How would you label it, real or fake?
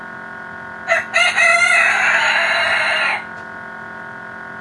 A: real